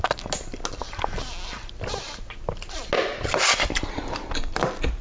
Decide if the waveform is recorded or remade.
recorded